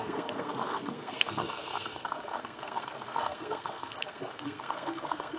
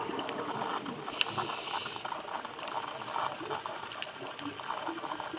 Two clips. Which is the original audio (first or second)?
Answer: second